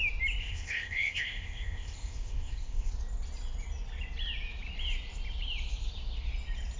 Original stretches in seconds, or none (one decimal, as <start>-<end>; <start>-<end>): 0.0-0.4; 2.9-6.8